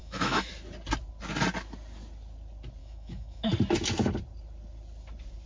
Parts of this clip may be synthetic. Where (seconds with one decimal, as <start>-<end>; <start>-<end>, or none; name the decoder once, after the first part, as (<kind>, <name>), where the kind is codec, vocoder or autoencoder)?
0.0-0.5 (autoencoder, DAC-VAE); 2.8-3.5